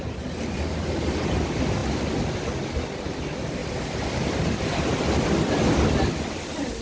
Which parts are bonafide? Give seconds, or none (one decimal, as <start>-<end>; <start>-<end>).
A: 0.0-6.8